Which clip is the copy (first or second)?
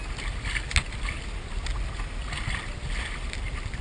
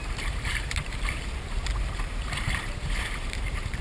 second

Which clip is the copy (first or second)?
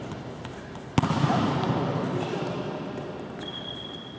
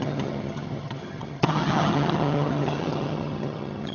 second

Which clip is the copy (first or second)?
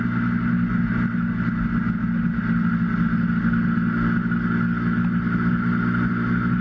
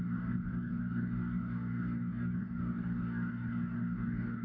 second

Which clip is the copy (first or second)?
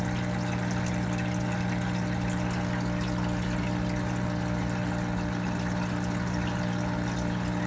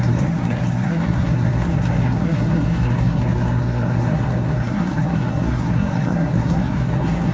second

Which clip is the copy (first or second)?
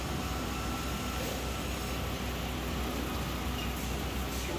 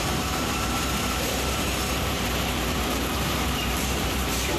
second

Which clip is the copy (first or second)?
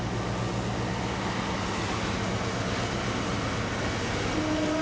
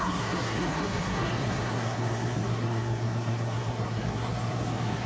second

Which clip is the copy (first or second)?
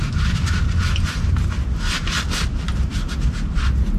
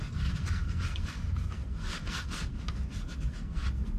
second